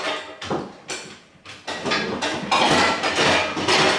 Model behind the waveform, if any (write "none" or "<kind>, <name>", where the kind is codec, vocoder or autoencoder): none